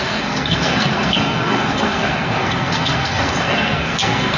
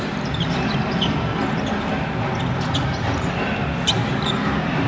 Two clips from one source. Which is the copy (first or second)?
first